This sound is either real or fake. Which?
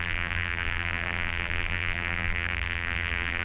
fake